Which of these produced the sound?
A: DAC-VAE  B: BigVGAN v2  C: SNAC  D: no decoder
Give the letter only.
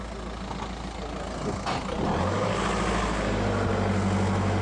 D